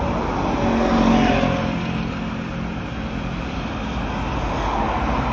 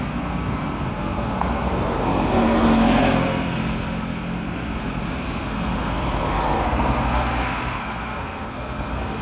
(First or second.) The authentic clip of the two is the first